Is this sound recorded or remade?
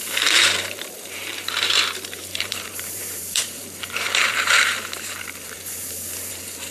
remade